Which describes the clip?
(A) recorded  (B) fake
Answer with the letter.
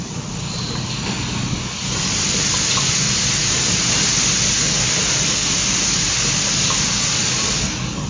A